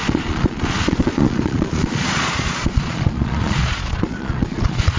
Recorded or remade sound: remade